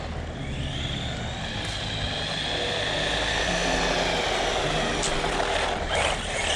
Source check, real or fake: real